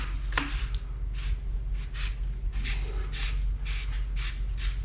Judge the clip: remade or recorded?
recorded